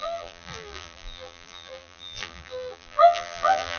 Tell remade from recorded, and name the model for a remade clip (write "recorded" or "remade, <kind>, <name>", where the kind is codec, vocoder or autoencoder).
remade, vocoder, BigVGAN v2